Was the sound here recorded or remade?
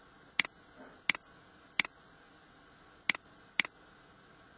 recorded